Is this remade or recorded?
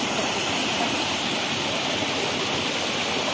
recorded